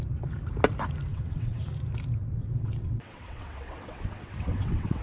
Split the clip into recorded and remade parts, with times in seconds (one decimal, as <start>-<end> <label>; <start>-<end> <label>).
0.0-1.1 recorded; 1.1-1.6 remade; 1.6-2.2 recorded; 2.2-5.0 remade